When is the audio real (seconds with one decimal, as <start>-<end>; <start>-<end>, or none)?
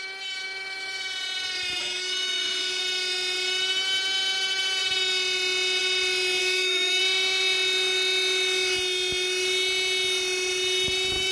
0.0-1.8; 2.8-6.4; 7.0-11.3